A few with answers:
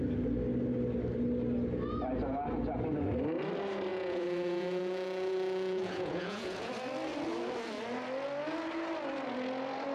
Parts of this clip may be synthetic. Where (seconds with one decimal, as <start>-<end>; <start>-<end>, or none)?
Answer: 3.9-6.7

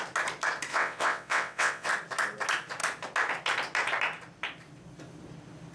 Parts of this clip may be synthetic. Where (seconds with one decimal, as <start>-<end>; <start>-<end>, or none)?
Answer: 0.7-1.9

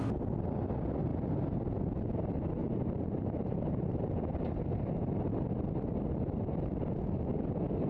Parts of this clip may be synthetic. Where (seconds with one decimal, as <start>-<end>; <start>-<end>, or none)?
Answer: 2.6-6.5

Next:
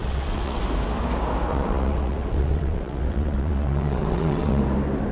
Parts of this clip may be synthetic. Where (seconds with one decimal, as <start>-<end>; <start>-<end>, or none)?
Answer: 0.0-0.6; 1.5-4.6

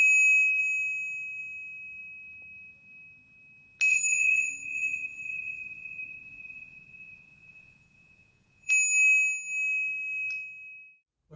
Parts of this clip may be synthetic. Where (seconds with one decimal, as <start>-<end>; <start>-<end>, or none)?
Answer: 3.9-8.7